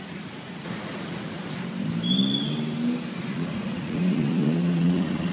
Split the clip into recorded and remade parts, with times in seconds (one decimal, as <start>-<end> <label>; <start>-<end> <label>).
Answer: 0.0-1.4 remade; 1.4-3.2 recorded; 3.2-5.3 remade